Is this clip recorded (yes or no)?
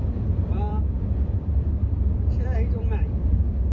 no